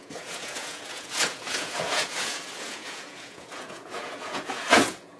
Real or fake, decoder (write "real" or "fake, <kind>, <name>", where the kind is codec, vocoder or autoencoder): fake, vocoder, Vocos